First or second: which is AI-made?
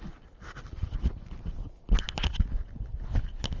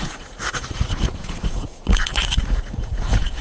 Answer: second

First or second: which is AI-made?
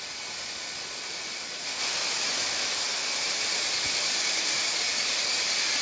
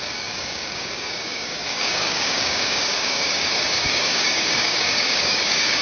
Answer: second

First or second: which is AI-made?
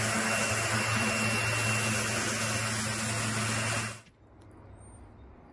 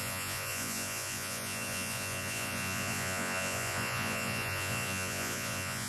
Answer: second